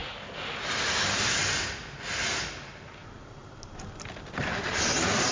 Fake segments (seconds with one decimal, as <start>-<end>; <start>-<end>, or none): none